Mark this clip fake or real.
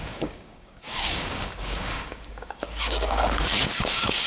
fake